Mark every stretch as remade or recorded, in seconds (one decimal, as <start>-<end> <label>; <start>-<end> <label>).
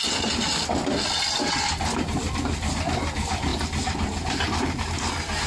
0.0-5.5 recorded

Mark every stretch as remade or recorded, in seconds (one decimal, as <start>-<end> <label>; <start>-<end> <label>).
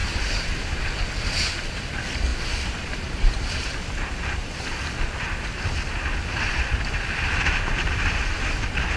0.0-0.5 remade; 0.5-2.3 recorded; 2.3-4.9 remade; 4.9-9.0 recorded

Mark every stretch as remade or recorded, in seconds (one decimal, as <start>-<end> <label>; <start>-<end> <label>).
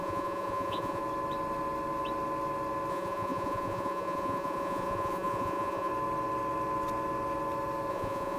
0.0-1.0 remade; 1.0-2.9 recorded; 2.9-5.9 remade; 5.9-7.9 recorded; 7.9-8.4 remade